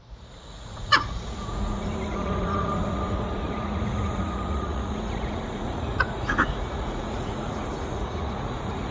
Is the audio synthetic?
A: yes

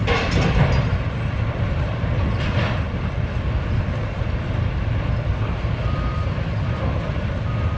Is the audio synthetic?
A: no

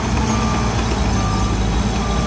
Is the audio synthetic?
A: no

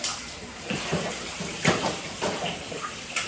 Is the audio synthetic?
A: yes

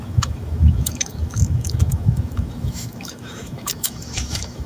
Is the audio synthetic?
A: yes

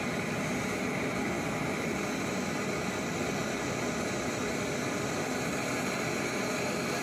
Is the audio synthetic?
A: no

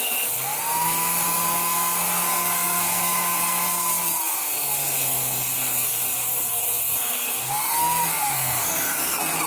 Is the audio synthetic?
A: yes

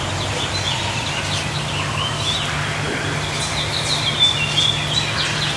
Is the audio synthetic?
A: no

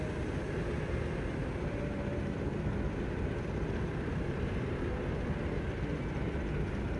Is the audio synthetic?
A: no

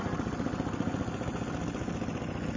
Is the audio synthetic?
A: no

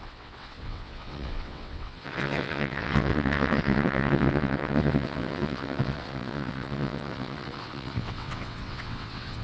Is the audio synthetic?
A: yes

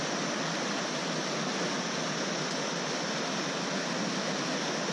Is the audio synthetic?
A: no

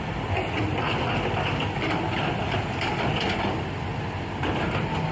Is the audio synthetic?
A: no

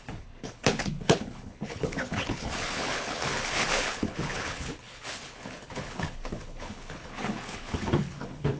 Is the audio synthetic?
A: yes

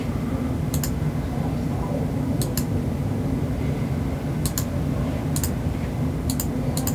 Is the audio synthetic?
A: no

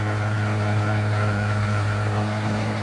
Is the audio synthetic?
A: yes